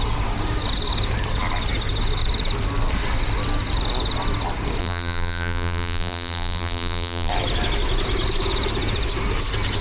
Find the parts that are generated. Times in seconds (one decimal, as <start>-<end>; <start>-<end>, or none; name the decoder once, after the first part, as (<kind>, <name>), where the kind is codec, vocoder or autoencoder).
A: 4.8-7.3 (vocoder, BigVGAN v2)